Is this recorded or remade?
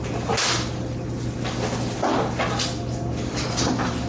recorded